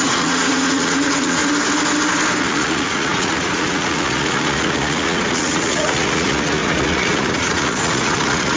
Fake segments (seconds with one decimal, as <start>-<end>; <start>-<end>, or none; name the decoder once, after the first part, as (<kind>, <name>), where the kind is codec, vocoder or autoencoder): 0.0-1.4 (vocoder, Vocos); 2.4-8.6